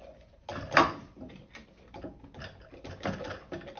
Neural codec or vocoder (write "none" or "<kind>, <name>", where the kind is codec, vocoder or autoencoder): none